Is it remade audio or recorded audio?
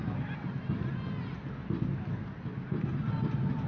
recorded